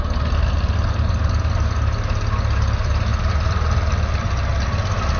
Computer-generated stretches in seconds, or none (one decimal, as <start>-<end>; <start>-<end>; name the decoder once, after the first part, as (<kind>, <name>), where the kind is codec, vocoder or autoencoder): none